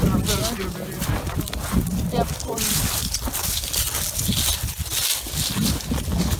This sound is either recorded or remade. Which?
recorded